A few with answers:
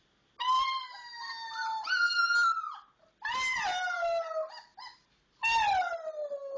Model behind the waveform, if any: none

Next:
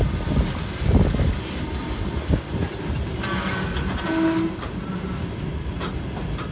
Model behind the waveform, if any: none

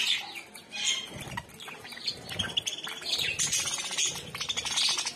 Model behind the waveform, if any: none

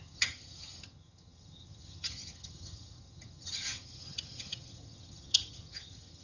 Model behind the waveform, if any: vocoder, HiFi-GAN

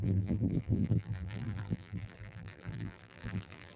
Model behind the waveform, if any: vocoder, BigVGAN v2